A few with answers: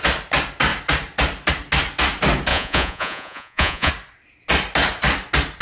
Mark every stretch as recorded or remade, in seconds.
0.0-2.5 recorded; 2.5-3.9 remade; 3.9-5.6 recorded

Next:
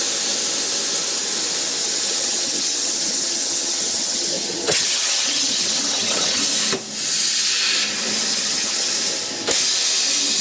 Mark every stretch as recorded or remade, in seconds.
0.0-1.8 recorded; 1.8-6.4 remade; 6.4-8.3 recorded; 8.3-8.9 remade; 8.9-10.4 recorded

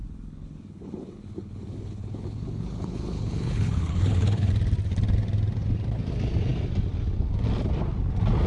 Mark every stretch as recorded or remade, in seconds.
0.0-4.5 remade; 4.5-8.5 recorded

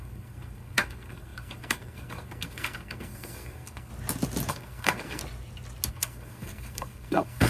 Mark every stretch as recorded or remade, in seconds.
0.0-3.9 remade; 3.9-4.5 recorded; 4.5-5.2 remade; 5.2-5.9 recorded; 5.9-7.5 remade

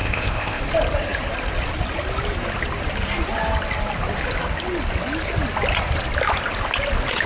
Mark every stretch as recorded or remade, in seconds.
0.0-0.6 remade; 0.6-7.3 recorded

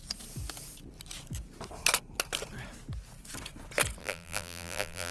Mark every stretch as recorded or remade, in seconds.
0.0-4.0 recorded; 4.0-5.1 remade